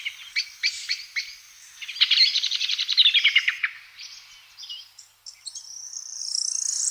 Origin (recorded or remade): recorded